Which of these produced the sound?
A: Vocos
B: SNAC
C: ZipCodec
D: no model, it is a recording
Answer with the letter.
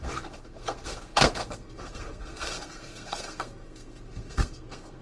B